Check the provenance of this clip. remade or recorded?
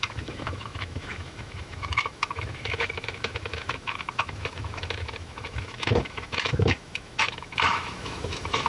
remade